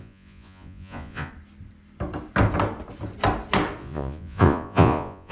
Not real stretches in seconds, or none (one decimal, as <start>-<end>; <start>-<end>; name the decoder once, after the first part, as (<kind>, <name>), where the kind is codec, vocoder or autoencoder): 0.0-1.3 (vocoder, Vocos); 3.8-5.3